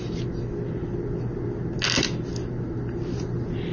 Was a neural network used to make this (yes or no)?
no